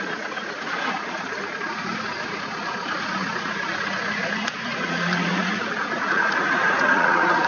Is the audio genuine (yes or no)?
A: no